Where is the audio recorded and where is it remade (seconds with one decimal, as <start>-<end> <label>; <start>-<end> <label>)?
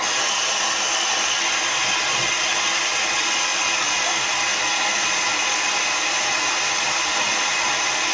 0.0-8.1 recorded